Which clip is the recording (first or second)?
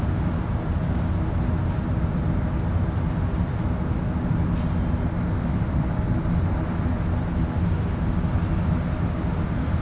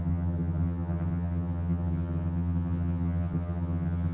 first